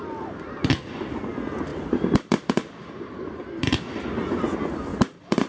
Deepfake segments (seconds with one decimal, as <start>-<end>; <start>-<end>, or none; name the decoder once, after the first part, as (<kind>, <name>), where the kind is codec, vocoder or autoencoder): 1.7-4.4 (vocoder, BigVGAN v2); 4.9-5.5